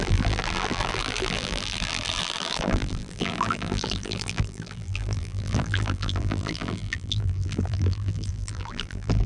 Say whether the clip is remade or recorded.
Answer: remade